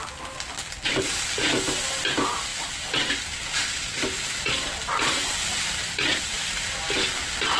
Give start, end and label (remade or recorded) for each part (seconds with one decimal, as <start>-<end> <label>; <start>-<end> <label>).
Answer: 0.0-7.6 recorded